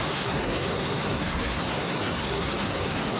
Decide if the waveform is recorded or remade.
remade